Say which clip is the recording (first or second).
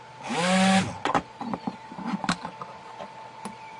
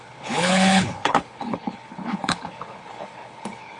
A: first